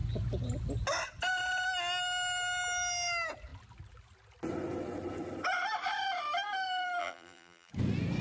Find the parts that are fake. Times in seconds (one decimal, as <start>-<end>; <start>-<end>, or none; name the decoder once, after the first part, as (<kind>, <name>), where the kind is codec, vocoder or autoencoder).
7.0-7.7 (vocoder, BigVGAN v2)